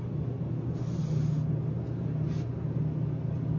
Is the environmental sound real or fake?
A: real